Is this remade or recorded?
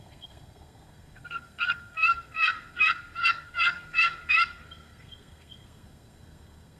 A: remade